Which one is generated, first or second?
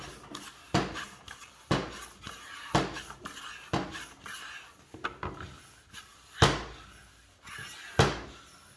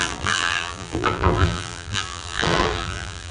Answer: second